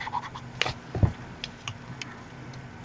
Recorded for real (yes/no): yes